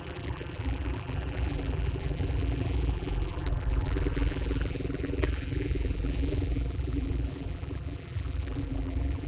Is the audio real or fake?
fake